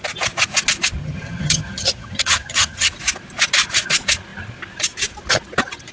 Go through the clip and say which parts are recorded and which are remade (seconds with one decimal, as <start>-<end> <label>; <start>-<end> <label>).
0.0-1.0 recorded; 1.0-2.9 remade; 2.9-5.9 recorded